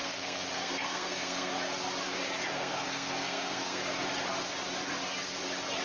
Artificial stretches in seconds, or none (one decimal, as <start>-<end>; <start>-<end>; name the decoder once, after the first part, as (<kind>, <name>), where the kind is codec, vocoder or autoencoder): 0.0-1.5 (codec, SNAC); 2.5-3.8